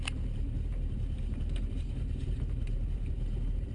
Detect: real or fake fake